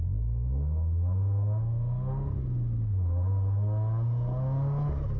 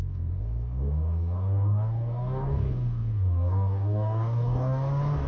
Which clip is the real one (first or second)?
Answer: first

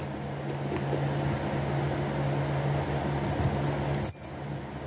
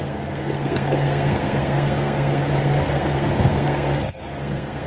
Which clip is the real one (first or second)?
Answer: first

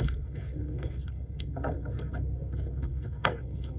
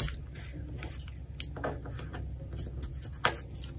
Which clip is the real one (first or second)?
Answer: second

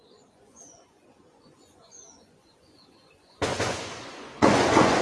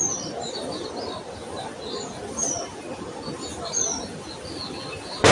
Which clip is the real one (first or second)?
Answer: second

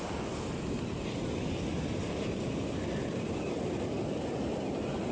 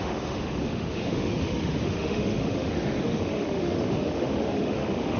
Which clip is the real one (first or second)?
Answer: first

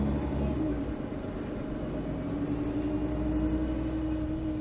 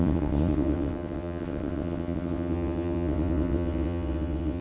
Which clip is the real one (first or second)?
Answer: first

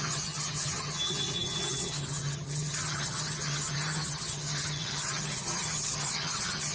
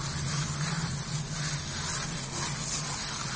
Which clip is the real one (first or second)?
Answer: second